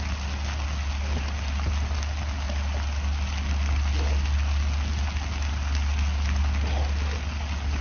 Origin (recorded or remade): recorded